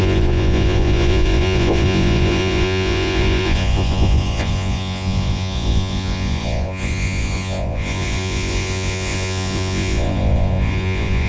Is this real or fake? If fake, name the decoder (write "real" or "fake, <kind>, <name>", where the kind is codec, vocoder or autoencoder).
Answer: fake, vocoder, Vocos